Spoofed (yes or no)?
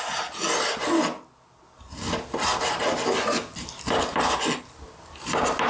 no